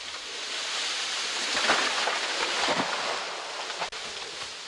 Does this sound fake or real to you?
real